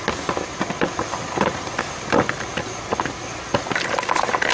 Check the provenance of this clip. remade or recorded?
recorded